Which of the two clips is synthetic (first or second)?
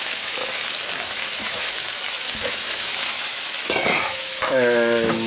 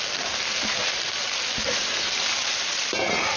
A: first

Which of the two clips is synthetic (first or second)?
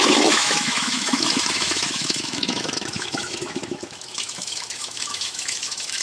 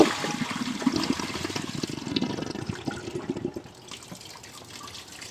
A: first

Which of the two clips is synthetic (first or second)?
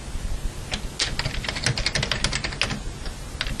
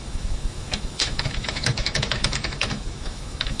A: second